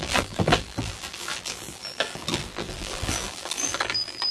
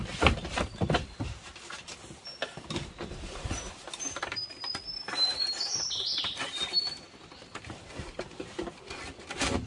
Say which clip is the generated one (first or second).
first